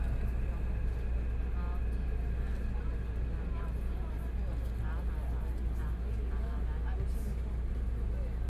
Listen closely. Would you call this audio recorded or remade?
recorded